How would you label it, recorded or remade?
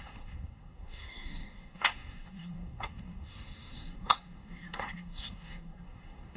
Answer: remade